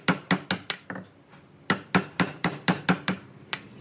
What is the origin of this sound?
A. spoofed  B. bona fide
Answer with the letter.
B